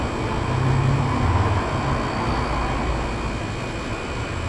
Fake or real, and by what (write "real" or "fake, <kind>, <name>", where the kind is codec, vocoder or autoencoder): real